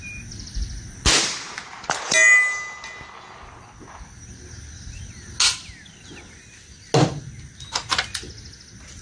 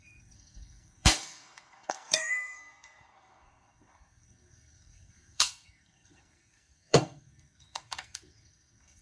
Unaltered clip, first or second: first